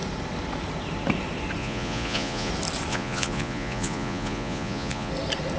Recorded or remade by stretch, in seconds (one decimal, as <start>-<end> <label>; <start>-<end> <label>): 0.0-1.6 recorded; 1.6-2.5 remade; 2.5-2.9 recorded; 2.9-5.1 remade; 5.1-5.6 recorded